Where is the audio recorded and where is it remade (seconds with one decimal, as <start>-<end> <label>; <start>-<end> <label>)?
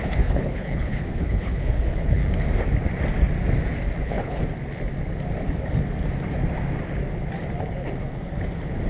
0.0-2.2 remade; 2.2-4.0 recorded; 4.0-4.4 remade; 4.4-8.9 recorded